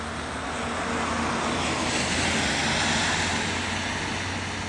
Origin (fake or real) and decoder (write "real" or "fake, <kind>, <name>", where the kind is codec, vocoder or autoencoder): real